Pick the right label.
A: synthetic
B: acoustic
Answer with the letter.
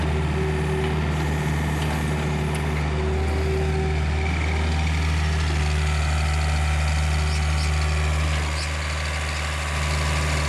B